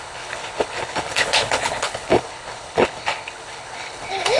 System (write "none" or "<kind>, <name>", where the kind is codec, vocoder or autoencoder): codec, HILCodec